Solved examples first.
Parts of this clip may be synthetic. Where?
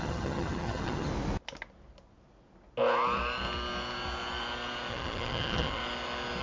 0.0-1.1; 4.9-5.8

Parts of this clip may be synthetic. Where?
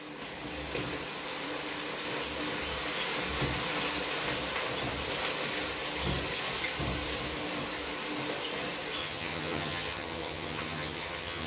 9.0-11.5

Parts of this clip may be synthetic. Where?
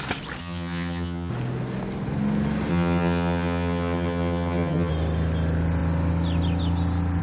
0.4-1.3; 2.7-4.9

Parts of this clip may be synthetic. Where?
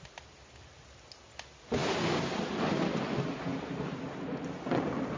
none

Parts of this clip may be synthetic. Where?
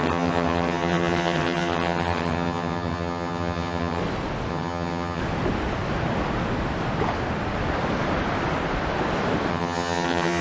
0.0-4.0; 4.5-5.2; 9.5-10.4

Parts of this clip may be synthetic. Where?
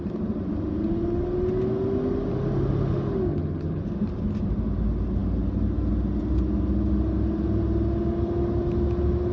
3.3-3.8